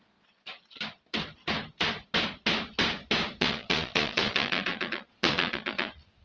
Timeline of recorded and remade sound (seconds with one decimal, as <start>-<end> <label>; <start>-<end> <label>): 0.0-0.5 remade; 0.5-3.4 recorded; 3.4-6.2 remade